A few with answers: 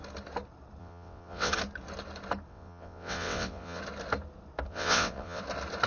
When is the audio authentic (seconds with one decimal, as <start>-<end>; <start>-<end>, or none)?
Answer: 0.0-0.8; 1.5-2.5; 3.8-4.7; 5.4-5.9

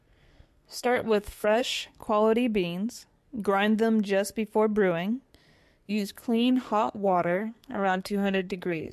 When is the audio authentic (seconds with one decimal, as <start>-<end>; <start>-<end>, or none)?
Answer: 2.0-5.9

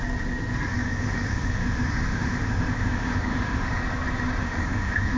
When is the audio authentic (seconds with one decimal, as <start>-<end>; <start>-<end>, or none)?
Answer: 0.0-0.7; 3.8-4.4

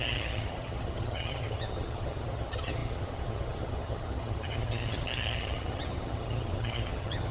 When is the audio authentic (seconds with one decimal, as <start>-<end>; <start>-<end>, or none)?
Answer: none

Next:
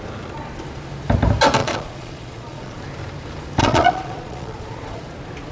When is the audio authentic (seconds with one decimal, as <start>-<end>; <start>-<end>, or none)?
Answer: 0.0-1.6; 2.8-3.6; 5.0-5.5